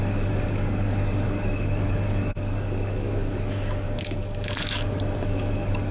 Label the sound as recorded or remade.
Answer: remade